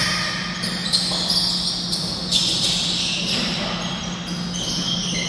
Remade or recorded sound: recorded